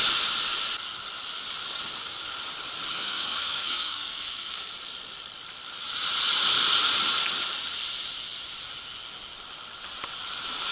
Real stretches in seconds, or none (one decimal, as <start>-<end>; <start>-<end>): 0.0-2.9; 4.7-10.7